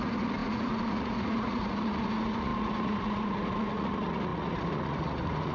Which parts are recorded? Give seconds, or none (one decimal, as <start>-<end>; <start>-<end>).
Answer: none